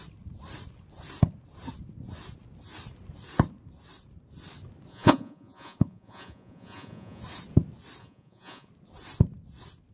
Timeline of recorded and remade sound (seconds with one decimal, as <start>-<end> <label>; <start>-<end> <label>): 0.0-4.9 recorded; 4.9-7.2 remade; 7.2-8.0 recorded; 8.0-8.7 remade; 8.7-9.9 recorded